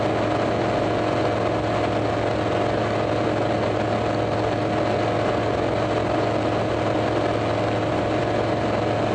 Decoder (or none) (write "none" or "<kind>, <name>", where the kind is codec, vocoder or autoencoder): none